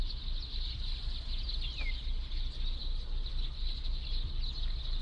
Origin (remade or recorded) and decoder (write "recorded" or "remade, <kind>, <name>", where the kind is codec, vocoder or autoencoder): recorded